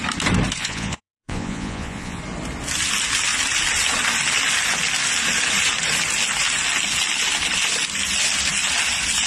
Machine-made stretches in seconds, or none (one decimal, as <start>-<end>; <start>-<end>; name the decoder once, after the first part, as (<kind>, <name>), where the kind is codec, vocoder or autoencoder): 0.6-2.2 (vocoder, Vocos)